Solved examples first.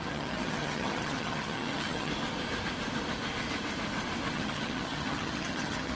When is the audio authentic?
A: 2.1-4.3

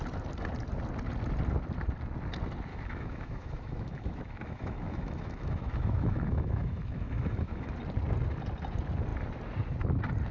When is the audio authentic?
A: 0.0-2.7; 7.7-10.3

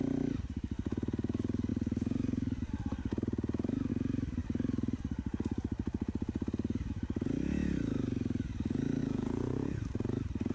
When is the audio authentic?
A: 0.0-9.0; 9.8-10.5